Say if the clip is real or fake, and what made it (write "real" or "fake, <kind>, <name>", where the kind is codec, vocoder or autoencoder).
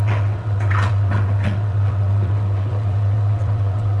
fake, vocoder, WaveNeXt